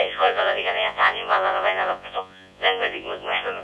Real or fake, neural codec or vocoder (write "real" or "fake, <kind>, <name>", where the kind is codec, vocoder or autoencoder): fake, vocoder, Vocos